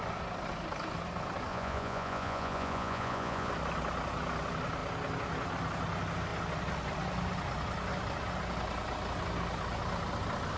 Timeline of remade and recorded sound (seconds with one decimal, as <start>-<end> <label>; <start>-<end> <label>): 0.0-1.5 recorded; 1.5-3.5 remade; 3.5-10.6 recorded